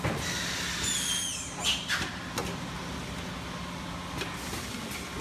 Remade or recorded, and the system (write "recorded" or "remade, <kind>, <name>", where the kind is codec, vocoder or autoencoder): recorded